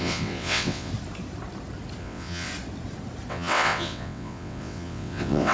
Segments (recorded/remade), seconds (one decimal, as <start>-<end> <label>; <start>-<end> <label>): 0.0-0.9 remade; 0.9-2.0 recorded; 2.0-2.5 remade; 2.5-3.3 recorded; 3.3-5.5 remade